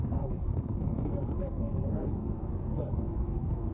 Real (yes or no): no